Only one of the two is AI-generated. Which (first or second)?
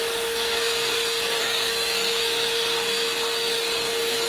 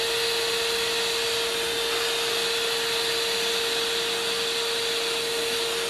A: first